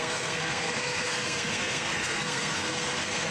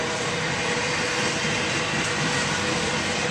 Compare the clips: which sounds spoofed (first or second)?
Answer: first